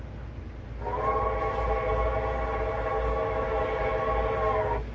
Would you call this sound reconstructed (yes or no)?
no